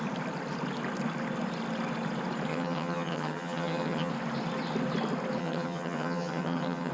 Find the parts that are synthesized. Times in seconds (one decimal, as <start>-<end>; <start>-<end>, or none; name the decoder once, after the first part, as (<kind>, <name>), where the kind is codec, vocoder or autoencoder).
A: 2.5-4.1 (vocoder, HiFi-GAN); 5.4-6.9